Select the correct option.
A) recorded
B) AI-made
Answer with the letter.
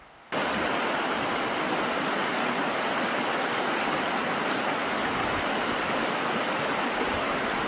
A